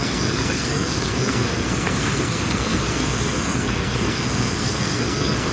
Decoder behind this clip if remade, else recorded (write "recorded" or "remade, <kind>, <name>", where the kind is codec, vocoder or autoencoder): remade, codec, SNAC